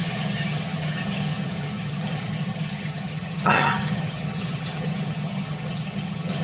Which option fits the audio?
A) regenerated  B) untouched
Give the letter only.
A